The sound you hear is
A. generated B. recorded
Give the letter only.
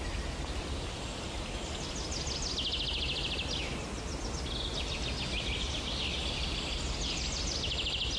B